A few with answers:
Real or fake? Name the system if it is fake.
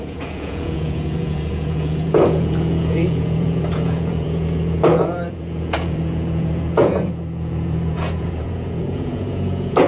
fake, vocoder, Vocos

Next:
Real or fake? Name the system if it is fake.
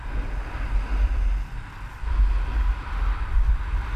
real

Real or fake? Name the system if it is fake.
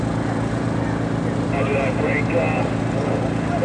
real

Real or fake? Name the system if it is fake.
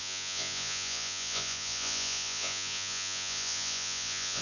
fake, vocoder, Vocos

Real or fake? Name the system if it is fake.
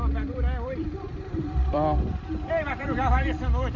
fake, vocoder, BigVGAN v2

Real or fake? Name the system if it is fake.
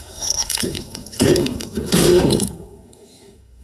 fake, codec, SNAC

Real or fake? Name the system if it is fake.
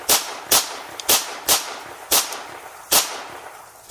fake, vocoder, BigVGAN v2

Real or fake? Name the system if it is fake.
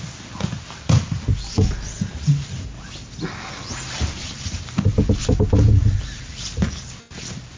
real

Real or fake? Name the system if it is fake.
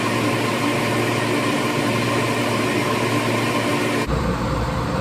real